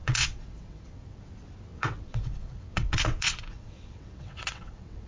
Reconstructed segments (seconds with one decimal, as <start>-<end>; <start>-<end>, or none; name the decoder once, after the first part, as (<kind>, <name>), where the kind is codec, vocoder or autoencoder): 0.0-1.2 (vocoder, WaveNeXt); 1.7-5.1